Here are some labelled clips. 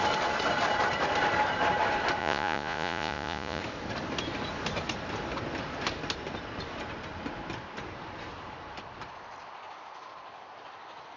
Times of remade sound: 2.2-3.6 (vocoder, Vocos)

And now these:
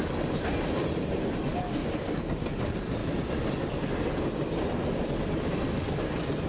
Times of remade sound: none

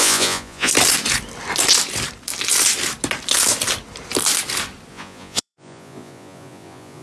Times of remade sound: 0.0-0.7 (vocoder, Vocos); 4.9-7.0

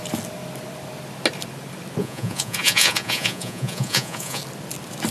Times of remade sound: 2.0-4.4 (vocoder, Vocos)

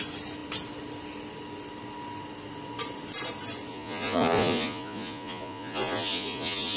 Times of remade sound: 3.7-6.8 (vocoder, Vocos)

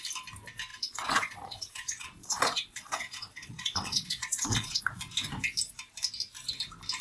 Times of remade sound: 0.7-4.8 (vocoder, Vocos)

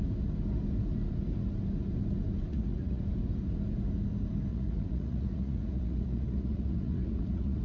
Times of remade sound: 2.5-3.0 (vocoder, Vocos); 4.5-7.6

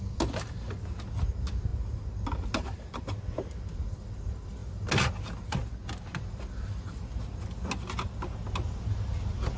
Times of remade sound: none